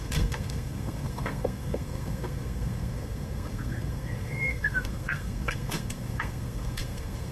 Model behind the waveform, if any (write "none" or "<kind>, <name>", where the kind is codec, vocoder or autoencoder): codec, SNAC